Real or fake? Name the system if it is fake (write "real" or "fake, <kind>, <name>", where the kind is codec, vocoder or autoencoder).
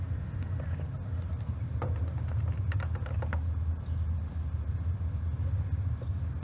real